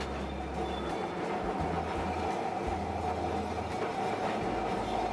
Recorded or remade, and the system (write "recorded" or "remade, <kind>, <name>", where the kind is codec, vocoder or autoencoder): recorded